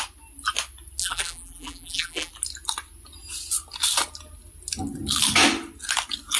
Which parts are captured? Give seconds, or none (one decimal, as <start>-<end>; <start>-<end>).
0.0-1.0; 2.3-6.4